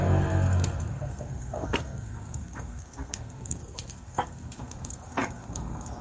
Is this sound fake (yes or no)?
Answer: yes